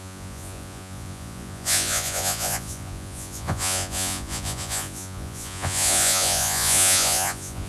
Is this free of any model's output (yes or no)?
no